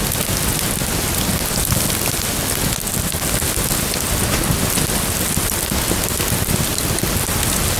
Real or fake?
real